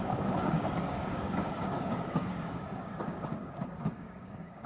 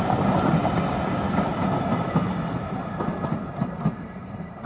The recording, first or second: second